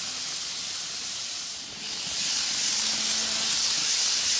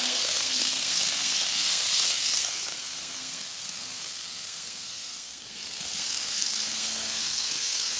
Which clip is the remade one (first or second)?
second